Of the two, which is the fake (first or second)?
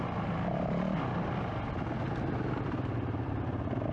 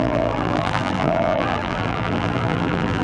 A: second